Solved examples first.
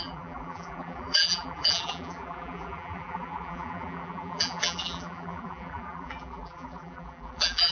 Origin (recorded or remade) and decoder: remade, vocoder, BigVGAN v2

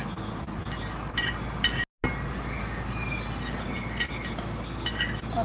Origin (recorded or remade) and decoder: recorded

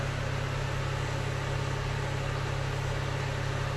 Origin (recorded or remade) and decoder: recorded